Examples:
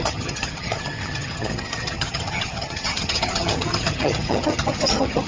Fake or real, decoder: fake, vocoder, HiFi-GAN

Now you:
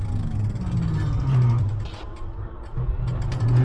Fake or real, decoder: real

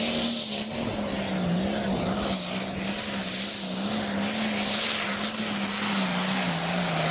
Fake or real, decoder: real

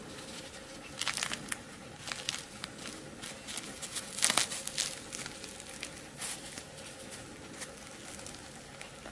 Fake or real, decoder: real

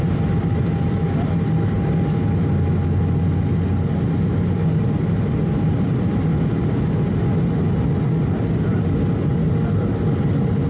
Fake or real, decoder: real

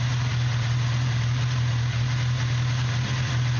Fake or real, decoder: real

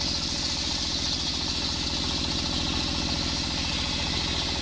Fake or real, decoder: real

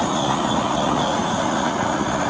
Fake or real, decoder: fake, vocoder, Vocos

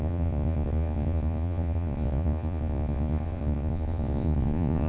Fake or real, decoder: fake, vocoder, Vocos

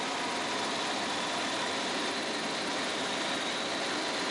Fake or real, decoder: fake, vocoder, BigVGAN v2